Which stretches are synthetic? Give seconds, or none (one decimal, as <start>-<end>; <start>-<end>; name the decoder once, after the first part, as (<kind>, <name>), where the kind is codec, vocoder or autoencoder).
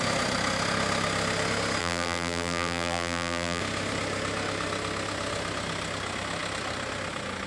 1.8-3.6 (vocoder, BigVGAN v2)